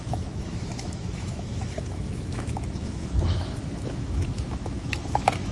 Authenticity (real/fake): fake